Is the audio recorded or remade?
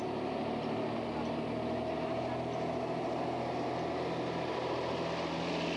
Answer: recorded